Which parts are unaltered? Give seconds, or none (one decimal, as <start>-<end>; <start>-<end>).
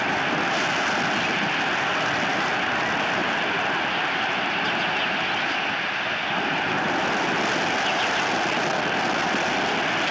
0.0-10.1